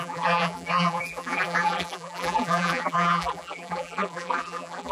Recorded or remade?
remade